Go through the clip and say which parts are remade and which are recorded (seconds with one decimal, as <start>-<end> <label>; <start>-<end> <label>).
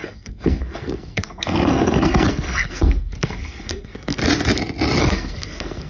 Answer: 0.0-4.2 remade; 4.2-5.0 recorded; 5.0-5.9 remade